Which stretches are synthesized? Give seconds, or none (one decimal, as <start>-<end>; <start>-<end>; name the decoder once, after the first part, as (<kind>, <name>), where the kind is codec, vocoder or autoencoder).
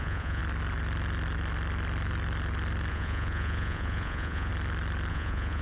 0.0-0.4 (vocoder, Vocos); 2.9-4.5; 5.1-5.6